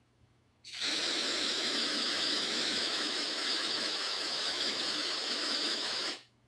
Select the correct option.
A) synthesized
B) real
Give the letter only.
A